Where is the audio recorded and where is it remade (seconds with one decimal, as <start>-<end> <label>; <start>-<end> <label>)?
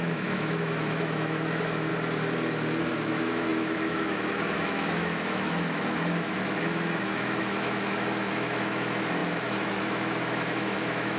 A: 0.0-1.9 remade; 1.9-2.8 recorded; 2.8-11.2 remade